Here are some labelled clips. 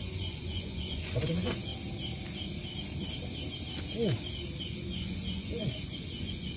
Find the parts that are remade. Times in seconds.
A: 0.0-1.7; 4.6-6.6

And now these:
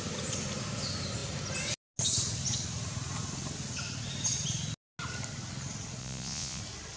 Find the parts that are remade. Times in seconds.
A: 6.0-6.6

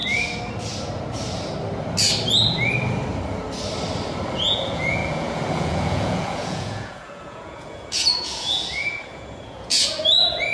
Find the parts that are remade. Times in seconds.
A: 4.3-10.5

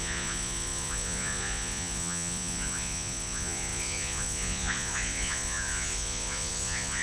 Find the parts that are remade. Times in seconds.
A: 0.0-7.0